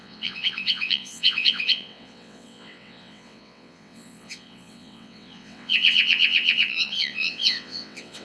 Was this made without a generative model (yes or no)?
no